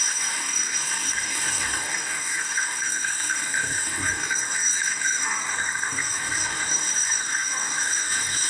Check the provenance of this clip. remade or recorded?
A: remade